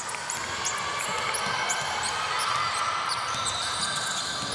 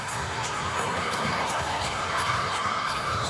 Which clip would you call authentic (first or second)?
first